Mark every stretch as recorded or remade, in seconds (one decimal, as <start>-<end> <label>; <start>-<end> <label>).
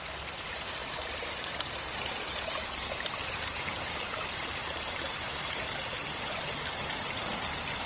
0.0-0.8 recorded; 0.8-3.9 remade; 3.9-4.6 recorded; 4.6-7.2 remade; 7.2-7.9 recorded